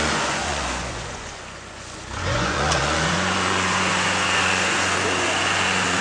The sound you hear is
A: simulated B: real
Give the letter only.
A